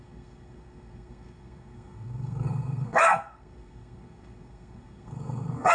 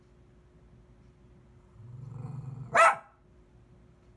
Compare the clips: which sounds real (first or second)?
second